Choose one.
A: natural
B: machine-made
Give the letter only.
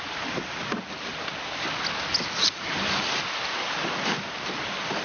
A